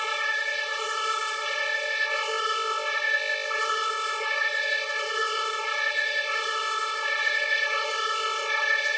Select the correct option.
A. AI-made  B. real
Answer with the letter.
A